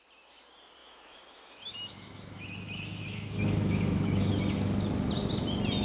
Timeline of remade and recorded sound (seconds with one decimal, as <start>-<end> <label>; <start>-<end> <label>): 0.0-0.8 recorded; 0.8-4.3 remade; 4.3-5.8 recorded